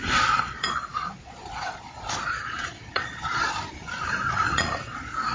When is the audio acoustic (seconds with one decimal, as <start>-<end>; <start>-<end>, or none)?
3.6-4.5